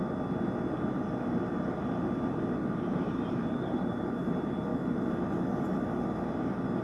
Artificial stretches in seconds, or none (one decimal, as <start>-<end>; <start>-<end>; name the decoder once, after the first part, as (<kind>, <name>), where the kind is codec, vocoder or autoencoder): 2.6-4.0 (vocoder, BigVGAN v2)